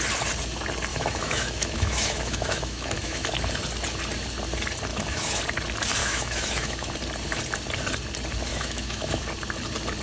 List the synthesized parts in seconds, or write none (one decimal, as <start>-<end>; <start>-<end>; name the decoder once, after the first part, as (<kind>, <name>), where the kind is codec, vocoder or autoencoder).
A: 0.9-3.3 (autoencoder, DAC-VAE); 4.9-5.4; 6.0-6.9; 8.5-9.2